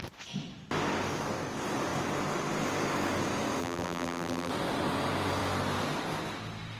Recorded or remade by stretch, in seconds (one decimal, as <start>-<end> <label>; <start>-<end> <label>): 0.0-3.6 recorded; 3.6-4.5 remade; 4.5-6.8 recorded